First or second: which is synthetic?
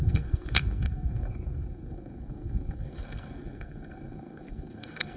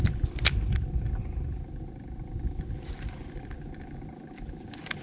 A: first